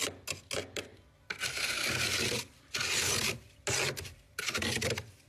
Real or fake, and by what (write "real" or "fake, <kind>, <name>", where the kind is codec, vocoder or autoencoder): real